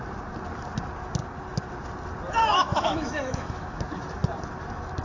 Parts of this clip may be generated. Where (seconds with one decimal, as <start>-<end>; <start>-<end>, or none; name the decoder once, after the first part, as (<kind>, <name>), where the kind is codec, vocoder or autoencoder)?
2.4-3.8 (autoencoder, DAC-VAE)